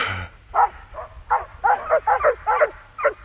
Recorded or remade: recorded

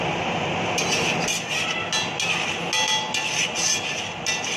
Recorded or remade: recorded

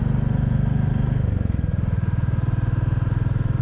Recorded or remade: recorded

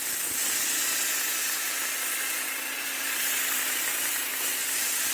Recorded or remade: remade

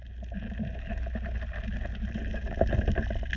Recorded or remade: recorded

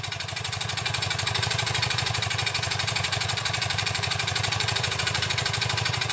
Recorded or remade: remade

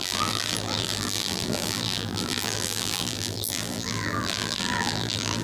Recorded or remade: remade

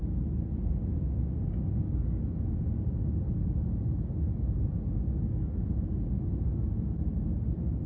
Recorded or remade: recorded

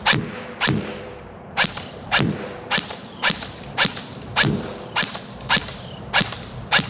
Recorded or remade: remade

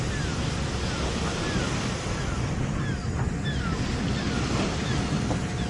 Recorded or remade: recorded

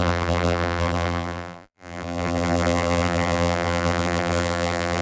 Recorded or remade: remade